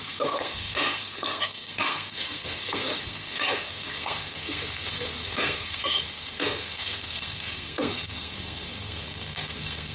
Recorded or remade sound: remade